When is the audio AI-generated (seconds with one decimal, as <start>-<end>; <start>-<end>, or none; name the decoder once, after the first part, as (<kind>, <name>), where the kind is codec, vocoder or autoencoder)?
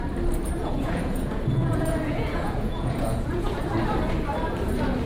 0.6-3.7 (vocoder, Vocos)